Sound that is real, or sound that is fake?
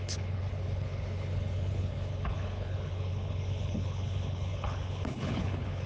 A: fake